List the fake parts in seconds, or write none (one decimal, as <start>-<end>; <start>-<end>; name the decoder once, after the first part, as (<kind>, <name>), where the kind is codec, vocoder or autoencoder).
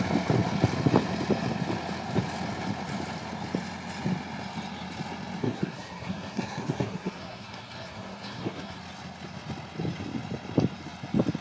5.4-8.8 (codec, SNAC)